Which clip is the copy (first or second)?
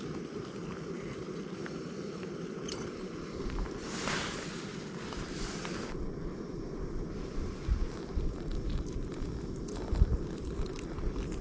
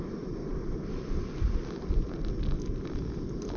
first